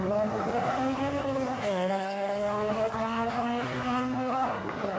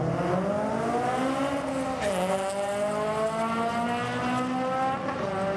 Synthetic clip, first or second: first